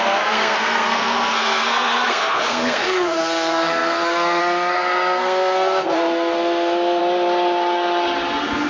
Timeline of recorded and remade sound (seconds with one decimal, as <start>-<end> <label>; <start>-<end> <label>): 0.0-7.0 remade; 7.0-8.7 recorded